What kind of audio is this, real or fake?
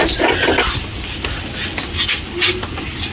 fake